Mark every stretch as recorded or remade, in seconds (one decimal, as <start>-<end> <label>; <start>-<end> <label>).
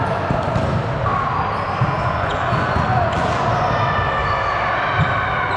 0.0-2.0 recorded; 2.0-3.5 remade; 3.5-5.6 recorded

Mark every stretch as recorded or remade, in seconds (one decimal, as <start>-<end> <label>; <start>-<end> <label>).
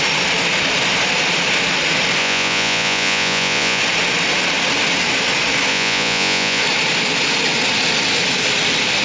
0.0-2.2 recorded; 2.2-3.8 remade; 3.8-5.7 recorded; 5.7-6.6 remade; 6.6-9.0 recorded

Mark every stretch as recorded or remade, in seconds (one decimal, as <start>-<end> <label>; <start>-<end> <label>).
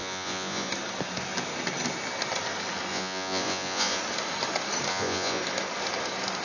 0.0-0.7 remade; 0.7-2.9 recorded; 2.9-4.0 remade; 4.0-4.9 recorded; 4.9-5.4 remade; 5.4-6.4 recorded